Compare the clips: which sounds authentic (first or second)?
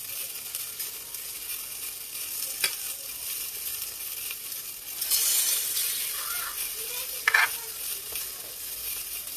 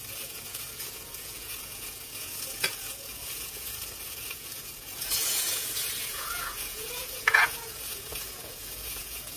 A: first